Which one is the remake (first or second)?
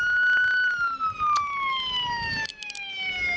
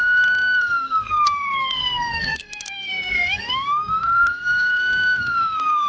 second